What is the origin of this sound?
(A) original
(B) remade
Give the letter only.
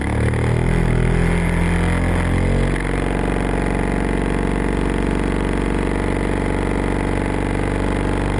A